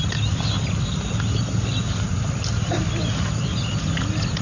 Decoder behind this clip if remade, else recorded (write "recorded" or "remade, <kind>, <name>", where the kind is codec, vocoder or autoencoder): recorded